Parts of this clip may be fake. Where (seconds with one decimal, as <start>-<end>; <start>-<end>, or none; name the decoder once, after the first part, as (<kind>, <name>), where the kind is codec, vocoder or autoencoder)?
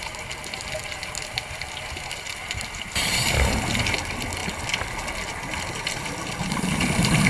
0.0-4.4 (vocoder, BigVGAN v2); 5.7-7.3